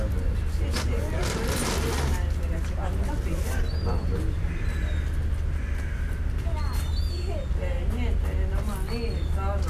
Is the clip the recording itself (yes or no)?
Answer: yes